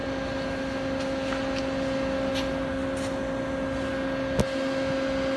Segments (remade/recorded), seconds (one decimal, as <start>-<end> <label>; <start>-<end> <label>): 0.0-5.4 recorded